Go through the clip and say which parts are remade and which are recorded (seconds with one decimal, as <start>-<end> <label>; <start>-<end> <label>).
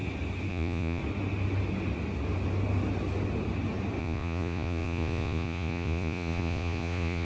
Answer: 0.0-0.5 recorded; 0.5-1.0 remade; 1.0-4.0 recorded; 4.0-7.2 remade